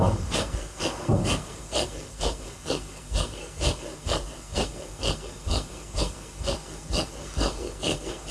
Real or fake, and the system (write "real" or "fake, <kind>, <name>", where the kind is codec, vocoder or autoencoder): fake, codec, SNAC